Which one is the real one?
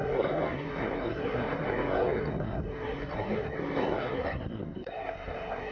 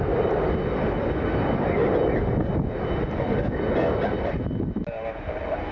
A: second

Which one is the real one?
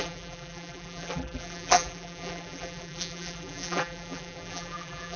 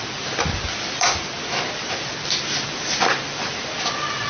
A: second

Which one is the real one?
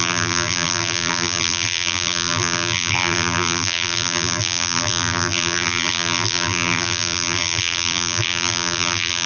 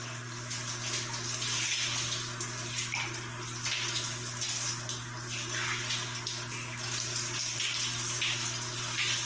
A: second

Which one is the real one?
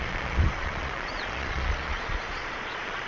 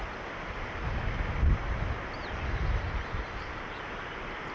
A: second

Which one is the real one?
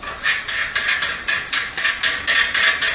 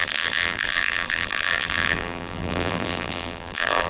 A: first